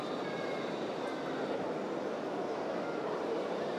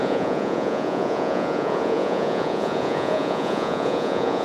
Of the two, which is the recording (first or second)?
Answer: first